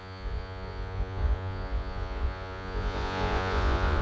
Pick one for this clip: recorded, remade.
remade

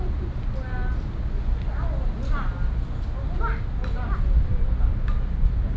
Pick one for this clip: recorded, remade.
recorded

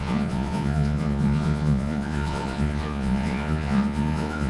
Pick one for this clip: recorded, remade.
remade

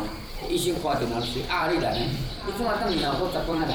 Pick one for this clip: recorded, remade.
remade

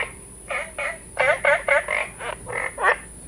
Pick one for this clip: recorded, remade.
recorded